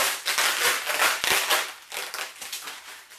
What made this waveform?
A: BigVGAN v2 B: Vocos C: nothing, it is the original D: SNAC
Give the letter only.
C